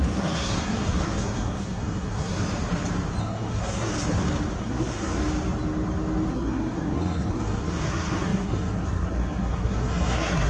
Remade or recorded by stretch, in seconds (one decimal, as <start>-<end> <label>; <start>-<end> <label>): 0.0-2.4 remade; 2.4-3.2 recorded; 3.2-3.9 remade; 3.9-4.6 recorded; 4.6-5.2 remade; 5.2-6.3 recorded; 6.3-10.5 remade